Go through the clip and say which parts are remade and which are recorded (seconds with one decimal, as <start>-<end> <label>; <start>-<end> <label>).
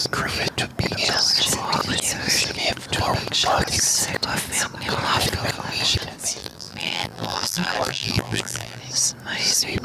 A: 0.0-6.4 recorded; 6.4-8.8 remade; 8.8-9.8 recorded